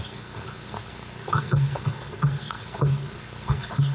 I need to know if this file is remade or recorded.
remade